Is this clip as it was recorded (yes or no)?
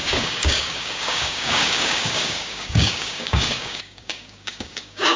no